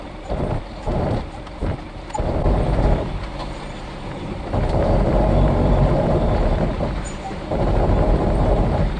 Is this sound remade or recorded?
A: remade